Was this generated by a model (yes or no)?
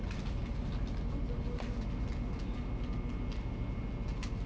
no